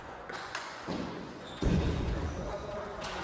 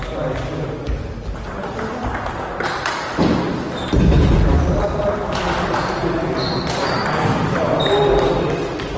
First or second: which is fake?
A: first